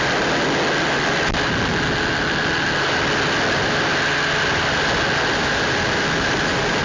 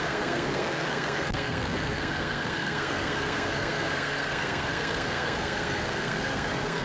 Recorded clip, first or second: first